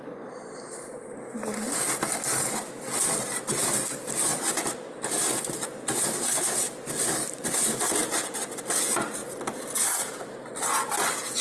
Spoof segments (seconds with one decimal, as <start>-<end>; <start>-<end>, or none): none